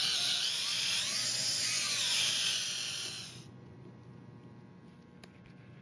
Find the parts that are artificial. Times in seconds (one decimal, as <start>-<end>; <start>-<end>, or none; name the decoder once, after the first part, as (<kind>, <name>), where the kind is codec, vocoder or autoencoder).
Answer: 1.1-4.1 (vocoder, Vocos)